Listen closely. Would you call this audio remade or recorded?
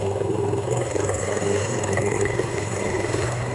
remade